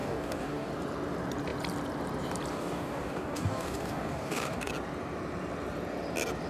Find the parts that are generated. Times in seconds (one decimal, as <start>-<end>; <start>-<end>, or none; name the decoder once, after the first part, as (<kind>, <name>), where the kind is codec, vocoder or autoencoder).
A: 0.0-0.7 (codec, DAC); 2.5-4.7

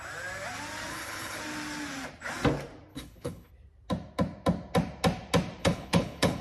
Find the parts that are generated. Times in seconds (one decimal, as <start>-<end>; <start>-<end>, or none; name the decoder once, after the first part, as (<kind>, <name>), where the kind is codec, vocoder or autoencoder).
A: 0.9-1.4 (codec, HILCodec); 2.9-3.5; 5.6-6.4

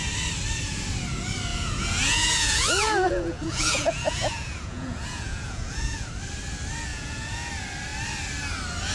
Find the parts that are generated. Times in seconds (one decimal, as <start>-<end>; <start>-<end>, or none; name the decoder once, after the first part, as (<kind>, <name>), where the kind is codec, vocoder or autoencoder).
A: 1.5-6.1 (vocoder, Vocos); 6.9-7.5

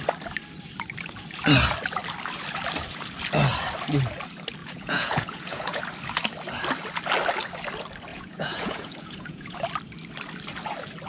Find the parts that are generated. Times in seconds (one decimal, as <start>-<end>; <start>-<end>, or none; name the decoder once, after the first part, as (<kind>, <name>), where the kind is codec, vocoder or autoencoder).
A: 4.6-5.8 (vocoder, Vocos); 8.1-9.7